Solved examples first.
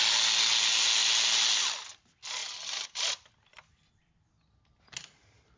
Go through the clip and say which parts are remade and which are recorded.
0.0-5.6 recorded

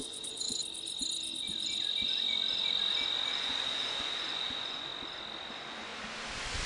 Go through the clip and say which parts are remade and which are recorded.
0.0-0.6 remade; 0.6-3.3 recorded; 3.3-4.9 remade; 4.9-5.5 recorded; 5.5-5.9 remade; 5.9-6.7 recorded

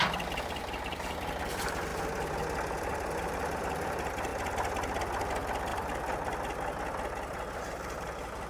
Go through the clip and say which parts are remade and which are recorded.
0.0-1.9 remade; 1.9-3.6 recorded; 3.6-4.3 remade; 4.3-5.3 recorded; 5.3-5.7 remade; 5.7-7.5 recorded; 7.5-8.5 remade